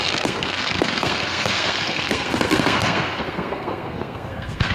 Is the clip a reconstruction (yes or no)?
yes